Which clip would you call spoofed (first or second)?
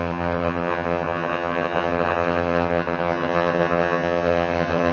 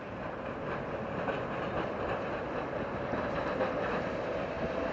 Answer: first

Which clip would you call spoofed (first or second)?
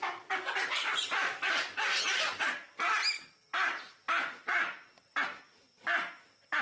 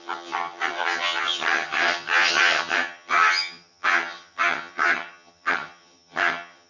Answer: second